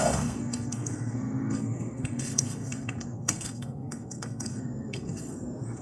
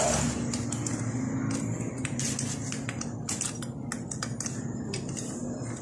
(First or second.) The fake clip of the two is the first